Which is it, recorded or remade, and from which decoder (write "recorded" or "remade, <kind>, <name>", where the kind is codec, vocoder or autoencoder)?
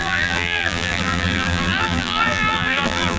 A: remade, vocoder, BigVGAN v2